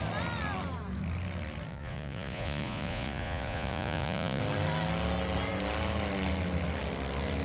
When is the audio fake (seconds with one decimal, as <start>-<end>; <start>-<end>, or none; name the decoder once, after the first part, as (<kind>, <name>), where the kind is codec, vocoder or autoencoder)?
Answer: 1.7-4.4 (vocoder, Vocos)